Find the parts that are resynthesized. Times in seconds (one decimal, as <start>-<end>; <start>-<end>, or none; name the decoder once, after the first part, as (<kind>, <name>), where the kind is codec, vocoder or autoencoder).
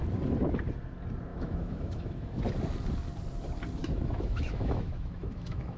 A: 1.3-2.4 (autoencoder, DAC-VAE); 3.8-5.8